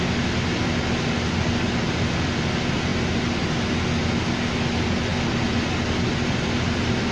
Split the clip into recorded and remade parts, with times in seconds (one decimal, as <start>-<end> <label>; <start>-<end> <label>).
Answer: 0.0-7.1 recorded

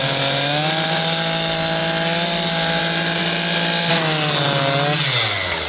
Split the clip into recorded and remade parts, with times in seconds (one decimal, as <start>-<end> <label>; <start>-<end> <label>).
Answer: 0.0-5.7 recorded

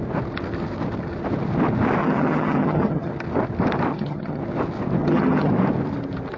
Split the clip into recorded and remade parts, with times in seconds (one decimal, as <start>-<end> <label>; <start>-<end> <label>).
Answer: 0.0-2.0 recorded; 2.0-3.1 remade; 3.1-3.9 recorded; 3.9-4.4 remade; 4.4-5.0 recorded; 5.0-5.5 remade; 5.5-6.4 recorded

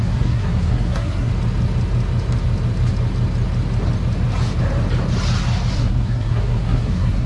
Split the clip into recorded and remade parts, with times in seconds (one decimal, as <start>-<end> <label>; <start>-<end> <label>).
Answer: 0.0-1.3 remade; 1.3-5.7 recorded; 5.7-7.3 remade

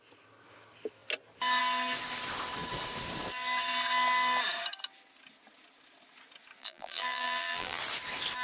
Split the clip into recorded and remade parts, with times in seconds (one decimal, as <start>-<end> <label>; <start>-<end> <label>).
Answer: 0.0-6.6 recorded; 6.6-7.8 remade; 7.8-8.4 recorded

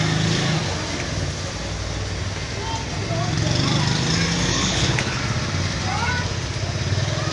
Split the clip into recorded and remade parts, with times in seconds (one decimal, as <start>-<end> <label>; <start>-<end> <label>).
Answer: 0.0-4.5 recorded; 4.5-5.2 remade; 5.2-7.3 recorded

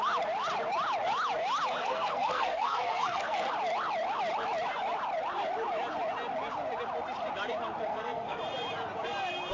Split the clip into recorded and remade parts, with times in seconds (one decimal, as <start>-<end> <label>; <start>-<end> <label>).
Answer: 0.0-1.8 recorded; 1.8-3.5 remade; 3.5-7.9 recorded; 7.9-8.4 remade; 8.4-9.5 recorded

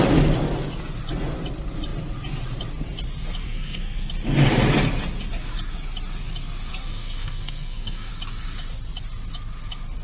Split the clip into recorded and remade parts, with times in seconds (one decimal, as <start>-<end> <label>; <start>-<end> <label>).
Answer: 0.0-3.4 recorded; 3.4-4.1 remade; 4.1-6.7 recorded; 6.7-8.1 remade; 8.1-10.0 recorded